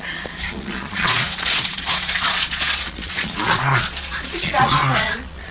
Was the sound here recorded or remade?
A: remade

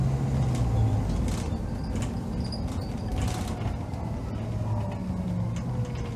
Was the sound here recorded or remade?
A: recorded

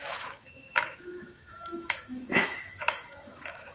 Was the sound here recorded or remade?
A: remade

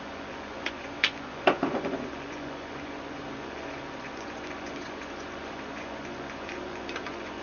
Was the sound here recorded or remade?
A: remade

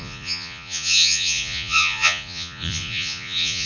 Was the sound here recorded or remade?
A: remade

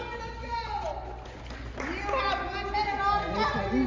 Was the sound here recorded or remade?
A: recorded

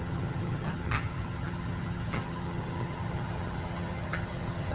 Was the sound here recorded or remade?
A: remade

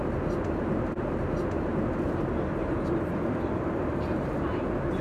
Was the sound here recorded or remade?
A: recorded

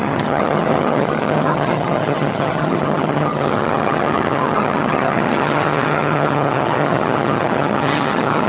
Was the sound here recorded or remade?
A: remade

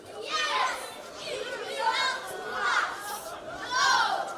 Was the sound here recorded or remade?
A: recorded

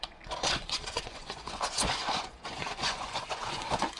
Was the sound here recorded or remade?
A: remade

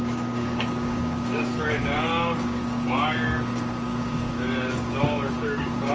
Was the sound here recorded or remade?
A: remade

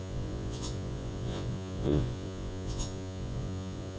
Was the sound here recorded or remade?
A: remade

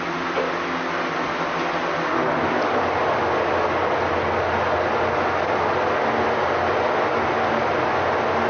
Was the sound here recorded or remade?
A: recorded